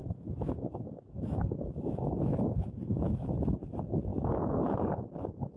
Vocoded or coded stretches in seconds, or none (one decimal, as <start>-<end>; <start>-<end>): 0.0-3.4; 4.1-4.7